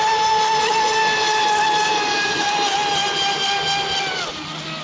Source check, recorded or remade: recorded